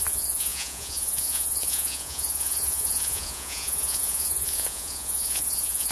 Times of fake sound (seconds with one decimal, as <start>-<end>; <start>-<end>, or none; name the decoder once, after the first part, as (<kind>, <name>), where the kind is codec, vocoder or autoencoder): 0.0-5.9 (vocoder, Vocos)